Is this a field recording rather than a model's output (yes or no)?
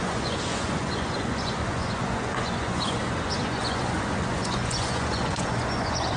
no